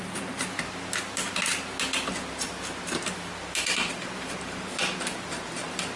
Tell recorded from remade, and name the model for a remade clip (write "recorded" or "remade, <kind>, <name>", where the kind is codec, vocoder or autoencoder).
recorded